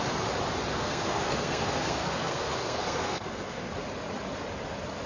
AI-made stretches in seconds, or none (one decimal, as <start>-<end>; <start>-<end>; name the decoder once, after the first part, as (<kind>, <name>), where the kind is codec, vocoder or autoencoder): 0.7-3.7 (codec, SNAC)